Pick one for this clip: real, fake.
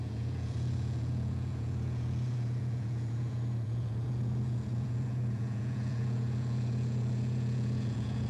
fake